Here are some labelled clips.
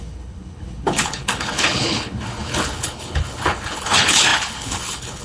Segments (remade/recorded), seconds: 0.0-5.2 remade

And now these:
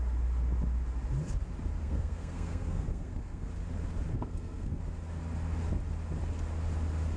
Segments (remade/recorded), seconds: 0.0-1.8 recorded; 1.8-3.5 remade; 3.5-4.1 recorded; 4.1-4.8 remade; 4.8-7.2 recorded